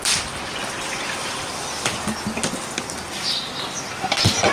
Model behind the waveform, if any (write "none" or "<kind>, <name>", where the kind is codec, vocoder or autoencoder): none